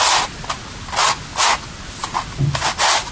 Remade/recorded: recorded